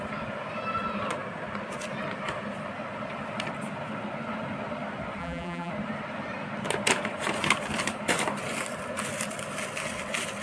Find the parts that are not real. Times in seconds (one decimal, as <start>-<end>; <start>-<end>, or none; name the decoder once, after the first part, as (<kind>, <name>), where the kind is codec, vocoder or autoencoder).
5.2-5.7 (vocoder, BigVGAN v2)